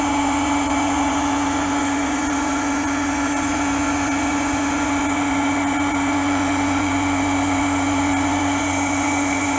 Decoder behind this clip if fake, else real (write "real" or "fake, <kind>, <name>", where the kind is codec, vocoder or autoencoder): fake, vocoder, Vocos